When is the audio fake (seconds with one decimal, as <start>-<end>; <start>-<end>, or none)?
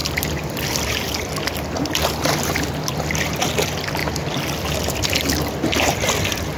none